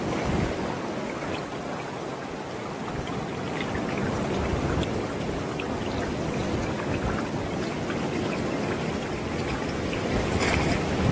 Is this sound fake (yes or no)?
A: no